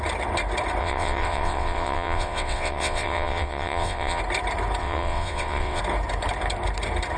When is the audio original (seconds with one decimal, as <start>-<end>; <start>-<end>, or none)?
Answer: 0.0-0.8; 4.2-4.8; 5.8-7.2